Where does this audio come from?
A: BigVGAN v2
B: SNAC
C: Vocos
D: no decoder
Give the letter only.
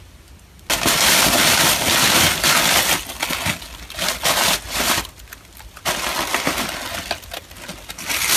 D